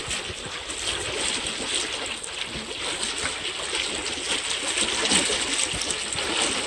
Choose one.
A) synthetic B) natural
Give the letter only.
B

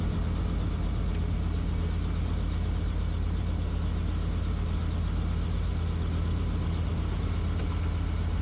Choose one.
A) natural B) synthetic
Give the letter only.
A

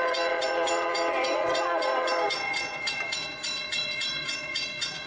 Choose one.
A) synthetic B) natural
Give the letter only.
A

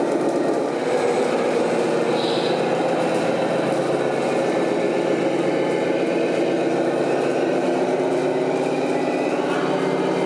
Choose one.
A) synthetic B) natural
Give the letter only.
B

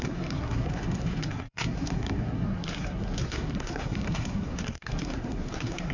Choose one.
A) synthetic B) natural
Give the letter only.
A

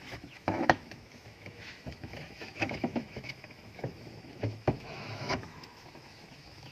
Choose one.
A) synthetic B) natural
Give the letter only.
A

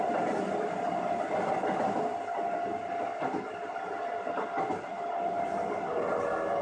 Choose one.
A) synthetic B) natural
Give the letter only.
B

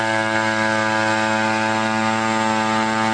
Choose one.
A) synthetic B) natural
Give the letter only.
B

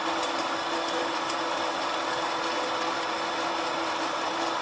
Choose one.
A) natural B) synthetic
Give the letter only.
A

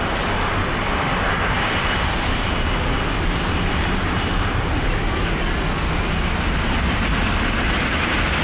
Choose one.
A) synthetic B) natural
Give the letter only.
B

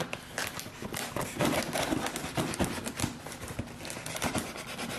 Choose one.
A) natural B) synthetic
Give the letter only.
A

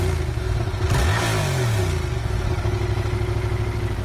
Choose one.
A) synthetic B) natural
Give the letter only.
B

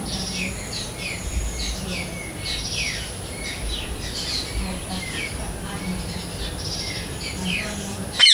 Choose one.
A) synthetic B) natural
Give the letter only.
B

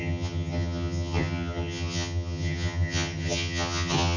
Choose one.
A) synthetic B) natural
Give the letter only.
A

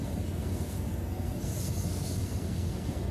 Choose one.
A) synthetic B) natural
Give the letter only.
A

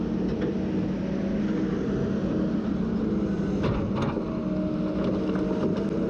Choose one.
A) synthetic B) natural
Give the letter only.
B